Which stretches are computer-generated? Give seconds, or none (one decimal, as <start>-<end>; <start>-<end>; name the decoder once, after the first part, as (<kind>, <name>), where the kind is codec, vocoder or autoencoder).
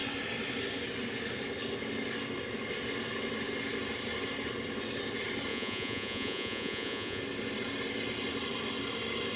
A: 5.5-7.2 (vocoder, Vocos)